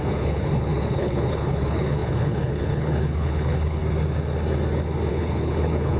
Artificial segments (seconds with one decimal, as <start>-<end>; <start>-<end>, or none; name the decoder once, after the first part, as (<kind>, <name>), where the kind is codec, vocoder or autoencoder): 0.0-3.8 (codec, HILCodec); 5.1-6.0